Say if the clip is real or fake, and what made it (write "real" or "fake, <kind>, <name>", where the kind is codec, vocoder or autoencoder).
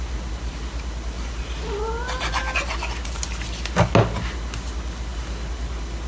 real